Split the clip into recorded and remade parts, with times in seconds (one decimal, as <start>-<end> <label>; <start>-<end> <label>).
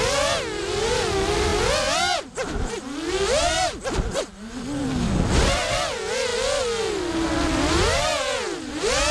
0.0-9.1 recorded